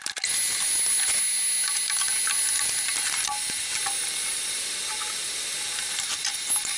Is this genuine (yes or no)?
yes